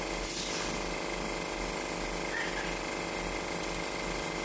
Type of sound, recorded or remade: recorded